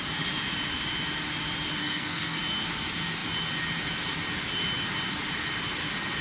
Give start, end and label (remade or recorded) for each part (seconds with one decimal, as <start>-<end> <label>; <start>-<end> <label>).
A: 0.0-1.8 recorded; 1.8-2.4 remade; 2.4-6.2 recorded